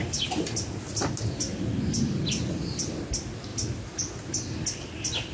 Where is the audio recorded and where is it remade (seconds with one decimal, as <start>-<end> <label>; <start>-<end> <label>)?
0.0-5.3 recorded